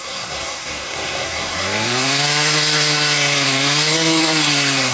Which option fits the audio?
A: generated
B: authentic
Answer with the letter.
A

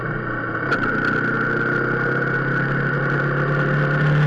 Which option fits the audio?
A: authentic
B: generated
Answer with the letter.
A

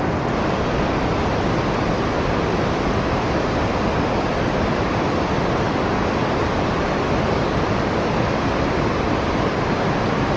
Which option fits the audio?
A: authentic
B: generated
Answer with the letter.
A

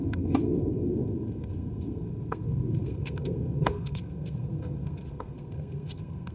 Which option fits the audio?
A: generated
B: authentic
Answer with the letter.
A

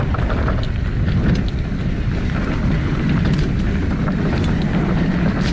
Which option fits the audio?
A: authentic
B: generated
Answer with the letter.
A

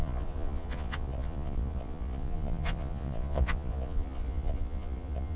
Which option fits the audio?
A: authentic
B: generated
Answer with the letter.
B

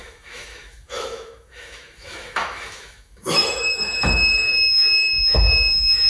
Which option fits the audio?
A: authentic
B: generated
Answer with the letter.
B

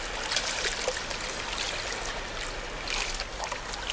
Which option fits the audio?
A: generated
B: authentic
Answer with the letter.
B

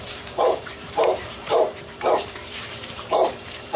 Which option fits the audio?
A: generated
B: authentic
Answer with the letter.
A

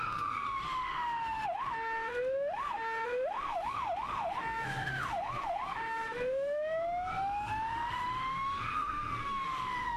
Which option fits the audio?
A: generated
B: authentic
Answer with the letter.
A